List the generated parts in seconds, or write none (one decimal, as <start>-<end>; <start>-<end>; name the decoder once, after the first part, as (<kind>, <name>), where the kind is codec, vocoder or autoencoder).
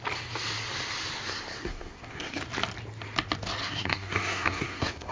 1.5-2.4 (codec, SNAC); 3.6-5.1